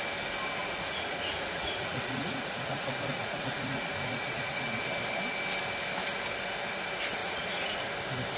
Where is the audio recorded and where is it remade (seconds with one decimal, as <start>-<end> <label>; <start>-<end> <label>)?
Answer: 0.0-0.6 recorded; 0.6-4.8 remade; 4.8-7.2 recorded; 7.2-7.9 remade; 7.9-8.4 recorded

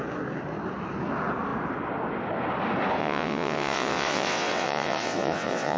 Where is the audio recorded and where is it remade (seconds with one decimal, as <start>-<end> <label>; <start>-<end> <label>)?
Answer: 0.0-3.0 recorded; 3.0-5.8 remade

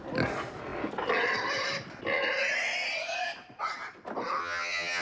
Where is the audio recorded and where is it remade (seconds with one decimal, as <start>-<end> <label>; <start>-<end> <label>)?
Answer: 0.0-4.4 recorded; 4.4-5.0 remade

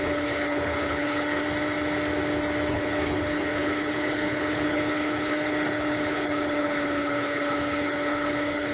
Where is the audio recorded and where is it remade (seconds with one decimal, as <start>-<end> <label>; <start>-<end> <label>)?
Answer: 0.0-1.4 remade; 1.4-2.7 recorded; 2.7-8.7 remade

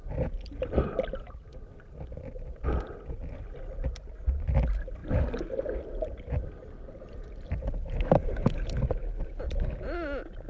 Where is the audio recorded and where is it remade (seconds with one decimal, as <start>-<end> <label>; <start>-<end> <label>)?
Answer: 0.0-10.5 recorded